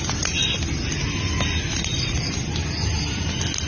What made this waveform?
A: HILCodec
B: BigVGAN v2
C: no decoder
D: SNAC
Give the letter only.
C